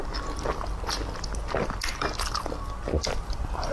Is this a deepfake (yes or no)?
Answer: no